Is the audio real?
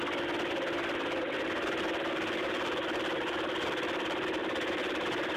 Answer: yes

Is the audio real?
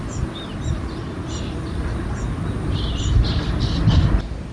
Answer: yes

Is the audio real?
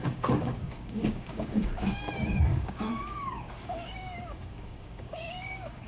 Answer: no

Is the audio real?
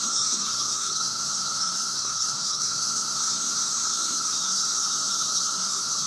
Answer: no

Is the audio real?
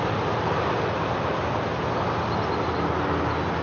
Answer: yes